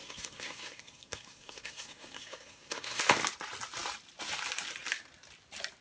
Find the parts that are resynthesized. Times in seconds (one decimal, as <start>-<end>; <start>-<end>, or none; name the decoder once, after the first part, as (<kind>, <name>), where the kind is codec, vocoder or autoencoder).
0.0-3.0 (codec, SNAC)